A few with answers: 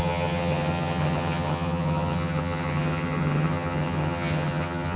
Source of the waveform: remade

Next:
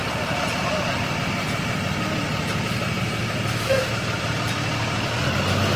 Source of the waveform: recorded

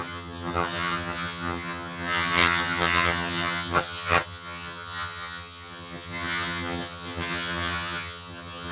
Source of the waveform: remade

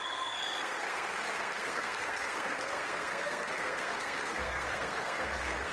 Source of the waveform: remade